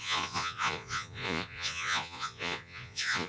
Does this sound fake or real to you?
fake